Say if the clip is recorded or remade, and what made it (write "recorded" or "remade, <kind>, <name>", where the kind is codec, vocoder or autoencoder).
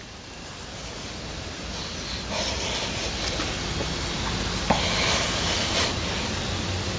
recorded